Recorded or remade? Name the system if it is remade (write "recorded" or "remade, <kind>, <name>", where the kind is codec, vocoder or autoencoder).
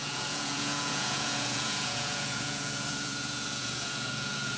remade, vocoder, Vocos